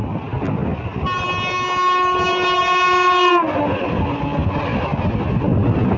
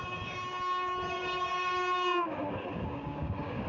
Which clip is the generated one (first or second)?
second